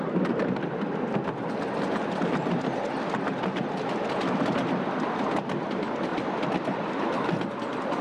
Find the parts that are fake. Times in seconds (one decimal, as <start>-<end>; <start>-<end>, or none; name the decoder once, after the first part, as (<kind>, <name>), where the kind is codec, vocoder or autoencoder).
none